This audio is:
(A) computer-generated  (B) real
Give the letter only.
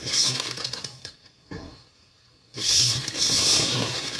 A